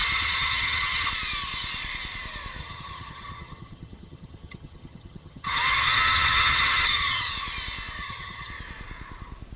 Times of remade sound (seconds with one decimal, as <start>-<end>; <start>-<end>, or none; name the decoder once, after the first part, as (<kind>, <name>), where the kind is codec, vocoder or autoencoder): 0.0-1.1 (vocoder, HiFi-GAN); 2.6-7.3; 8.0-8.5